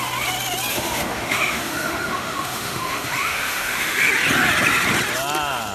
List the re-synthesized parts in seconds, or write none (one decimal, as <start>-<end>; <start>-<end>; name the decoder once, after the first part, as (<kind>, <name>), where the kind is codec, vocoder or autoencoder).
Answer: 0.7-4.1 (autoencoder, DAC-VAE)